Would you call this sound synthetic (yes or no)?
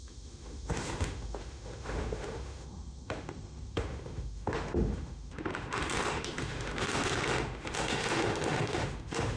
yes